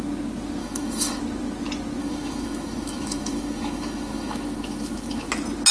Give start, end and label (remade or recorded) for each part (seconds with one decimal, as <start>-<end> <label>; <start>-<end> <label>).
0.0-0.6 recorded; 0.6-1.2 remade; 1.2-2.0 recorded; 2.0-5.3 remade; 5.3-5.7 recorded